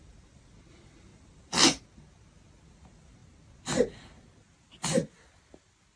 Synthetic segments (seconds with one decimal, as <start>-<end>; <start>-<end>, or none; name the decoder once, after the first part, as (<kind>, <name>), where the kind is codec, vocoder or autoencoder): 0.0-3.2 (vocoder, BigVGAN v2)